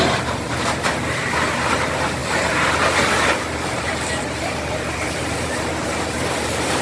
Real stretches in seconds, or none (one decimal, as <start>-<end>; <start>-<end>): none